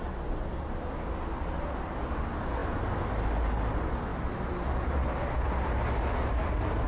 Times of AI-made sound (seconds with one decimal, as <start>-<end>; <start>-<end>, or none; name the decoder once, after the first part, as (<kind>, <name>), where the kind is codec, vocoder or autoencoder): none